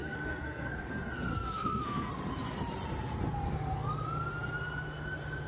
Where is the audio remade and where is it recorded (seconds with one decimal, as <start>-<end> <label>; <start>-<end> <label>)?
0.0-0.8 remade; 0.8-1.3 recorded; 1.3-2.1 remade; 2.1-5.5 recorded